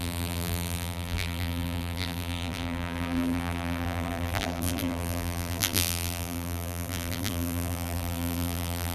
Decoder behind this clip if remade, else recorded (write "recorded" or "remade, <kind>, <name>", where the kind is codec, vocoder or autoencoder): remade, vocoder, BigVGAN v2